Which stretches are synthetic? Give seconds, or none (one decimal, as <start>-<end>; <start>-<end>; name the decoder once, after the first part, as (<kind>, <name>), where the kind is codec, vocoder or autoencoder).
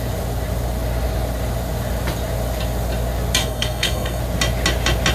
3.4-4.2 (codec, SNAC)